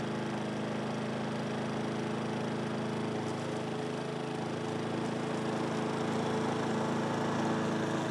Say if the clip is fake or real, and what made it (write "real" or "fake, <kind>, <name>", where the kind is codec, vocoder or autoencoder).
real